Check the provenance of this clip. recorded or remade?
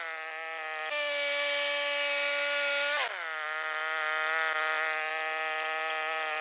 recorded